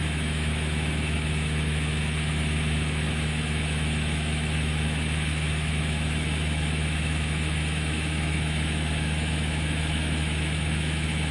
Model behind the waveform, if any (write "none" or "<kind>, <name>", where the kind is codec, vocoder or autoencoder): autoencoder, DAC-VAE